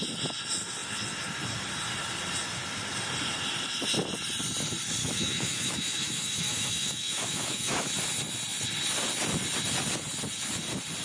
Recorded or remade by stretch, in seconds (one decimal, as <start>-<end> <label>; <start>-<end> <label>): 0.0-5.0 recorded; 5.0-7.9 remade; 7.9-11.0 recorded